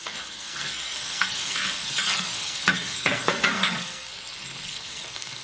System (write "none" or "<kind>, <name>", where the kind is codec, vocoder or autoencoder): codec, SNAC